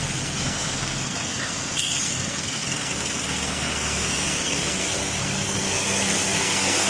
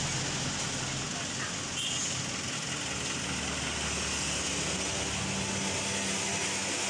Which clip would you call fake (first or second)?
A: first